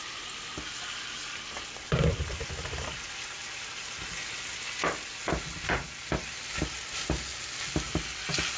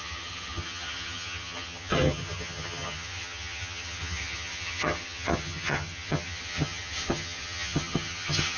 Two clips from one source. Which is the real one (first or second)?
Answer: first